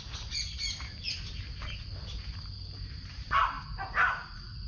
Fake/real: real